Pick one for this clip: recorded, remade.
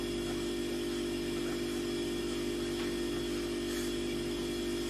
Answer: recorded